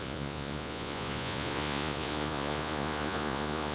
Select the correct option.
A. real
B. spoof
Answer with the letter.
B